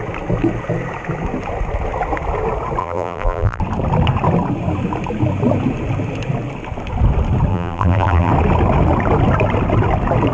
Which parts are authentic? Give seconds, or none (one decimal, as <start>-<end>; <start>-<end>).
0.0-2.8; 3.6-7.5; 8.3-10.3